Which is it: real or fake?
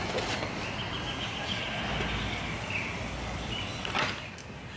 real